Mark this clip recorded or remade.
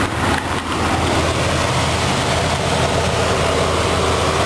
recorded